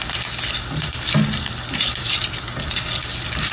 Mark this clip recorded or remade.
recorded